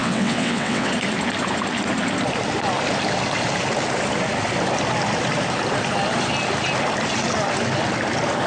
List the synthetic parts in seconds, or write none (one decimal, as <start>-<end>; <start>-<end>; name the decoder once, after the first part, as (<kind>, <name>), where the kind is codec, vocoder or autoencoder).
0.0-0.9 (vocoder, WaveNeXt)